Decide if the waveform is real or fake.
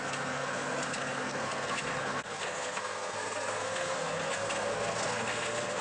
fake